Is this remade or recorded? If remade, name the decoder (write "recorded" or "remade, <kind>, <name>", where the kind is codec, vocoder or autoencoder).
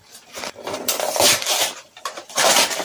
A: remade, vocoder, BigVGAN v2